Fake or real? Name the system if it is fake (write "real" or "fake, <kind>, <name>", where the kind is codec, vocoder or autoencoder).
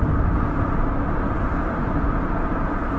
real